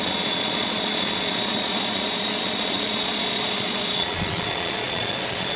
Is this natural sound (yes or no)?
no